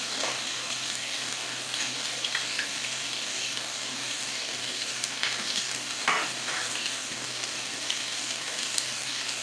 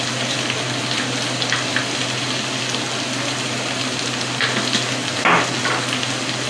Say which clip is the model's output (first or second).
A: first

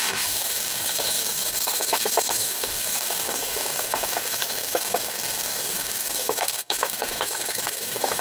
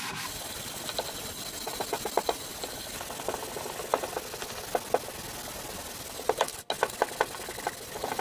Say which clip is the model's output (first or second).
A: first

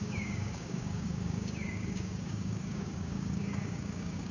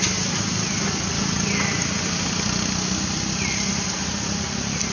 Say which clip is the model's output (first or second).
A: first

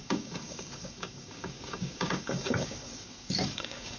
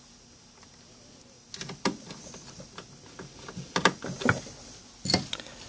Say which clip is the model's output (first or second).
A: first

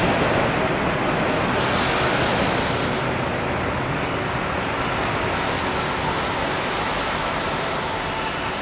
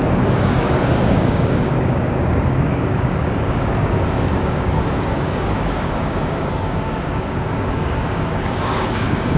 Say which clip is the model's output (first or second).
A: second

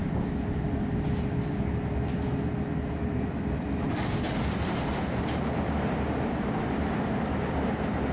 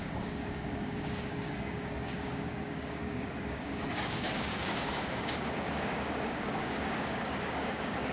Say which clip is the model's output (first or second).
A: second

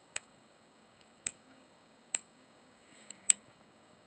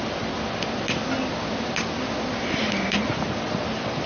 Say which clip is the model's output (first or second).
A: first